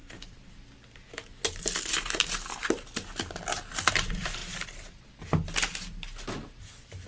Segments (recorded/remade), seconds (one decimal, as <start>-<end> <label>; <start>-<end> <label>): 0.0-3.9 recorded; 3.9-4.4 remade; 4.4-6.6 recorded; 6.6-7.1 remade